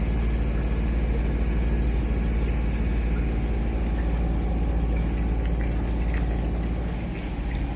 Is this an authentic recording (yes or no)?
yes